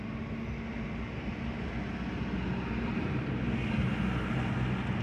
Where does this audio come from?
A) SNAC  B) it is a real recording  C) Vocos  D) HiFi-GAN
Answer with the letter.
B